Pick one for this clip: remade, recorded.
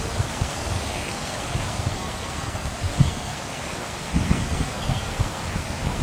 remade